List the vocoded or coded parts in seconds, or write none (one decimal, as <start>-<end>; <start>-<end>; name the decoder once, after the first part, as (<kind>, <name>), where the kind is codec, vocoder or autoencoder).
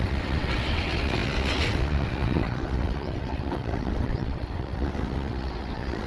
0.0-6.1 (vocoder, WaveNeXt)